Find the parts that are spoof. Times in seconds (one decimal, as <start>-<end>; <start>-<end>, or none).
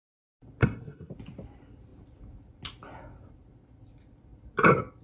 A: 0.6-1.1